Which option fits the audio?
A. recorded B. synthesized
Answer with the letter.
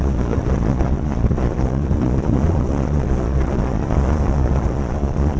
B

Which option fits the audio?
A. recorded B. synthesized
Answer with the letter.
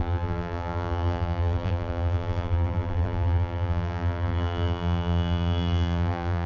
B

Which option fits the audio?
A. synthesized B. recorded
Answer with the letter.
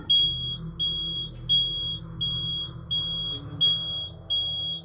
B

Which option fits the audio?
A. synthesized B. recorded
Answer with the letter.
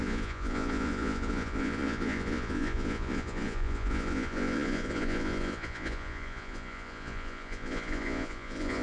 A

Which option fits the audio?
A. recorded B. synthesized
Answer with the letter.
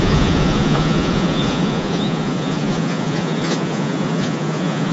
B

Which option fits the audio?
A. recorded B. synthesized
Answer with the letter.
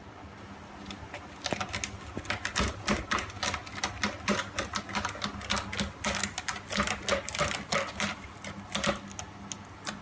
A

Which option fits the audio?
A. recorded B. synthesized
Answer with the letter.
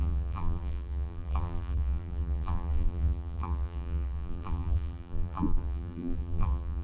B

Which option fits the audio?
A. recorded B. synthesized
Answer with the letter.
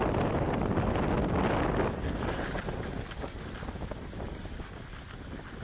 A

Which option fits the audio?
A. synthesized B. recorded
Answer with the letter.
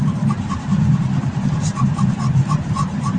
B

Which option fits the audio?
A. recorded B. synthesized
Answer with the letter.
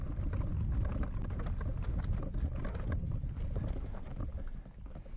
A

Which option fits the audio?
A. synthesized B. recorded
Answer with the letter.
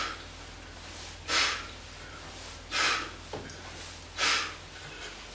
B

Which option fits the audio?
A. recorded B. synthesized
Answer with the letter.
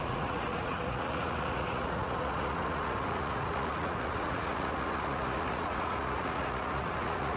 B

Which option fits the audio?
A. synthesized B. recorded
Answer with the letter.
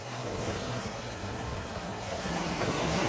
A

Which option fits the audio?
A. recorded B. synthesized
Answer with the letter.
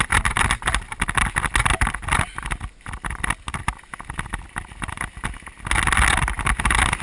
A